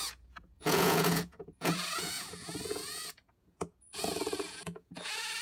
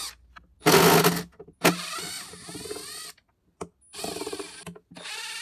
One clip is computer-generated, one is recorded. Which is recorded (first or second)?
second